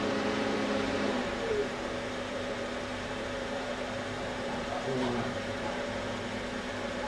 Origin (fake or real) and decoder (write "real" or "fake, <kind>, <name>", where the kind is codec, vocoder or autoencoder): fake, vocoder, BigVGAN v2